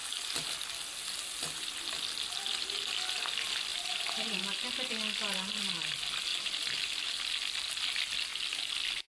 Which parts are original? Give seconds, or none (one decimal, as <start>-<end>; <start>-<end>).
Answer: 0.0-3.7; 4.4-6.3; 7.2-9.2